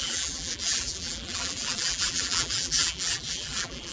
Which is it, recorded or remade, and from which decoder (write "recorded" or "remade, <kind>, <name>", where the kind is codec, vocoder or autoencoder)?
remade, vocoder, BigVGAN v2